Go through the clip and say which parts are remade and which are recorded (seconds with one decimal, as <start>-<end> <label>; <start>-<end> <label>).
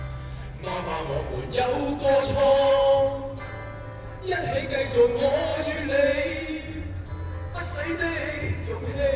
0.0-1.4 recorded; 1.4-2.7 remade; 2.7-5.5 recorded; 5.5-7.0 remade; 7.0-7.5 recorded; 7.5-8.3 remade; 8.3-9.2 recorded